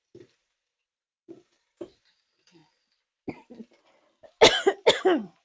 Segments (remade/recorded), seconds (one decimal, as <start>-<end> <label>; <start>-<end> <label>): 0.0-2.6 remade; 2.6-5.4 recorded